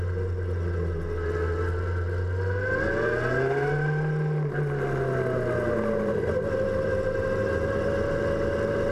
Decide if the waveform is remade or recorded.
recorded